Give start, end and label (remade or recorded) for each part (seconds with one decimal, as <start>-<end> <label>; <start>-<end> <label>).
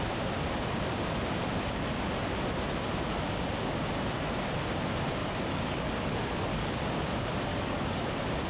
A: 0.0-5.2 recorded; 5.2-6.7 remade; 6.7-7.5 recorded; 7.5-8.0 remade; 8.0-8.5 recorded